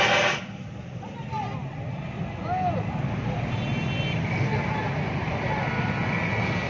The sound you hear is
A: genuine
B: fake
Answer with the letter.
A